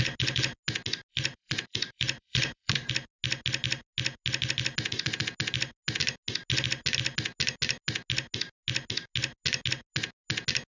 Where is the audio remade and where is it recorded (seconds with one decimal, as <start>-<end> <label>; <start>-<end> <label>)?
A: 0.0-1.1 recorded; 1.1-2.9 remade; 2.9-10.7 recorded